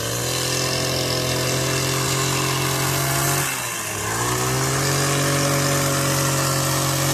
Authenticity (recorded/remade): recorded